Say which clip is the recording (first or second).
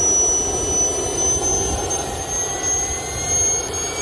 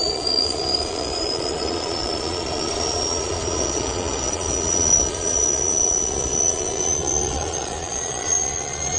first